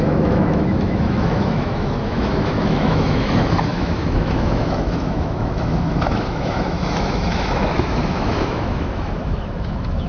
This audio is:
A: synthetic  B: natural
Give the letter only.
A